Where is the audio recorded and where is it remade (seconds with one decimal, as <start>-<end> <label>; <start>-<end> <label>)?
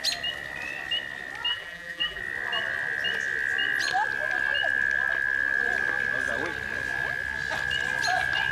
0.0-1.5 recorded; 1.5-2.2 remade; 2.2-8.5 recorded